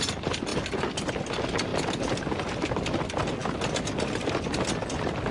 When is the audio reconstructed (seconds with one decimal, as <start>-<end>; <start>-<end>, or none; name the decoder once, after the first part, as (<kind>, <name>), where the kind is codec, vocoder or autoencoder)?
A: none